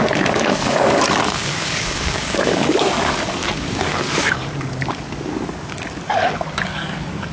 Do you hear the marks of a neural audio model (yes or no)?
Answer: yes